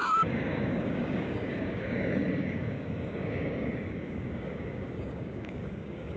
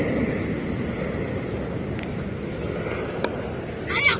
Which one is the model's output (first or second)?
first